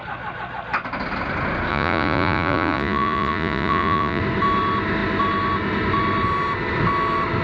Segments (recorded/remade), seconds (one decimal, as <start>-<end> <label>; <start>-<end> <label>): 0.0-1.7 recorded; 1.7-4.2 remade; 4.2-7.4 recorded